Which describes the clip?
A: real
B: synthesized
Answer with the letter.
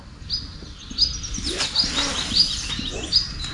A